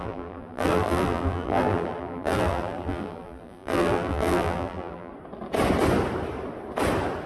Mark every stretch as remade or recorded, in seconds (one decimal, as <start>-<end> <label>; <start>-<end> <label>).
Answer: 0.0-5.1 remade; 5.1-7.3 recorded